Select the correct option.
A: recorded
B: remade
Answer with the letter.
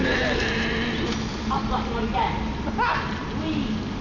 A